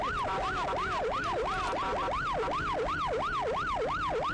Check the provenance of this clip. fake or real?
real